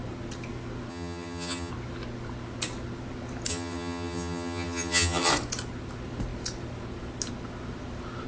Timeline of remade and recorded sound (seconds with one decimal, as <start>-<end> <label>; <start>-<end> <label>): 0.0-0.9 recorded; 0.9-1.7 remade; 1.7-3.5 recorded; 3.5-5.3 remade; 5.3-8.3 recorded